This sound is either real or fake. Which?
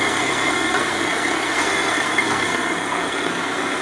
fake